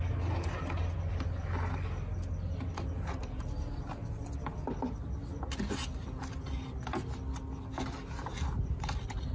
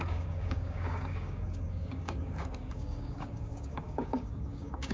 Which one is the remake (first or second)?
second